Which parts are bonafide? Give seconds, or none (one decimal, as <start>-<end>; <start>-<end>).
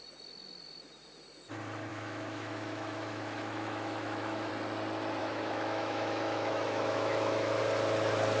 0.0-1.9; 4.5-5.2; 7.6-8.4